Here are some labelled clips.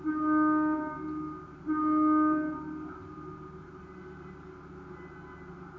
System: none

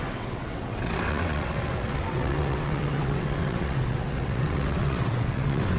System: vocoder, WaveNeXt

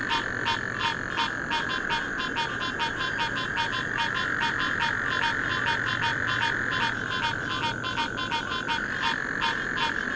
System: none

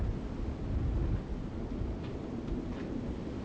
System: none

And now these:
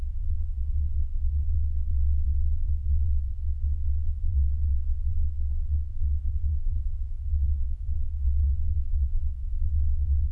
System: vocoder, WaveNeXt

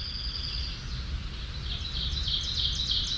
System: none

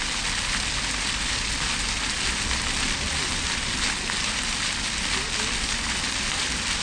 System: none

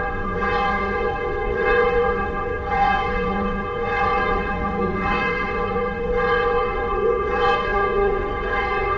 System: vocoder, WaveNeXt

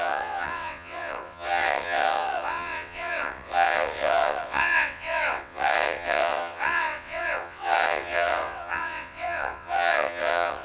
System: vocoder, WaveNeXt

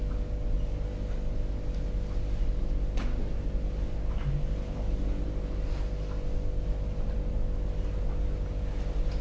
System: none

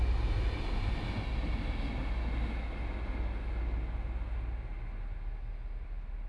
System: none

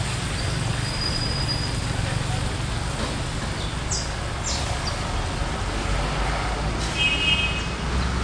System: none